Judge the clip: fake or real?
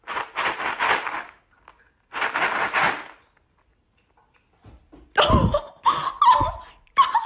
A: real